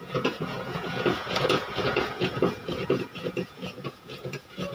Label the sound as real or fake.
fake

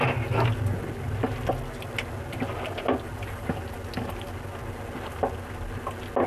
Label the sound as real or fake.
real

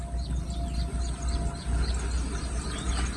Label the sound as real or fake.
real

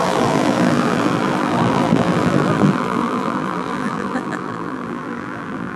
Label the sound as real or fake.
fake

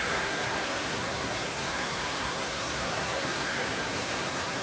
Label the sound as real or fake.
fake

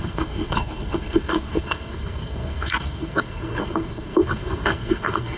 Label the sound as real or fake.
fake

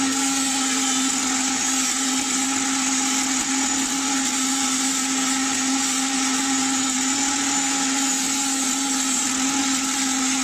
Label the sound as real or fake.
real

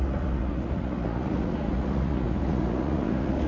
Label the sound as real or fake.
fake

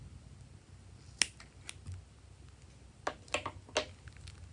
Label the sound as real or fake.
real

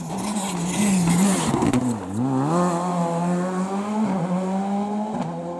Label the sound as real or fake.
real